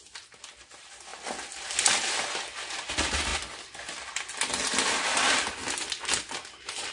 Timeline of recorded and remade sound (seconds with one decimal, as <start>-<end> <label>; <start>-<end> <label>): 0.0-6.9 recorded